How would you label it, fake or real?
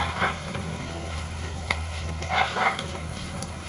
fake